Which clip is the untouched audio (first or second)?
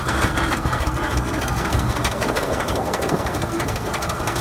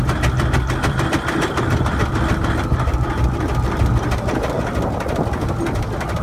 second